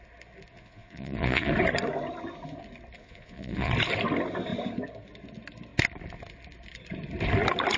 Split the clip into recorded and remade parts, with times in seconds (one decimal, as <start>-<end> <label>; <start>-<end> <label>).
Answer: 0.0-0.5 recorded; 0.5-1.5 remade; 1.5-3.0 recorded; 3.0-3.7 remade; 3.7-7.8 recorded